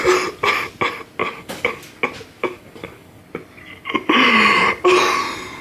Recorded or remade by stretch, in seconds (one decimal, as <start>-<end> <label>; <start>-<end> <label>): 0.0-1.2 recorded; 1.2-1.8 remade; 1.8-2.4 recorded; 2.4-3.2 remade; 3.2-5.6 recorded